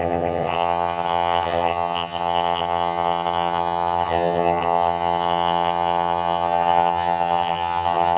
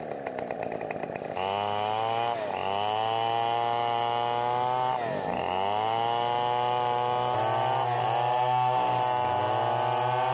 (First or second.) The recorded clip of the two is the second